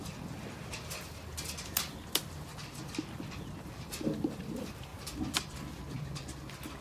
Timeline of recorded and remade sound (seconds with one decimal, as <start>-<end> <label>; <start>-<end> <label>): 0.0-6.8 recorded